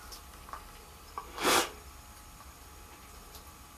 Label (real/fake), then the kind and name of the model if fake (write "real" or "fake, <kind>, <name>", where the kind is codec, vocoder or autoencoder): real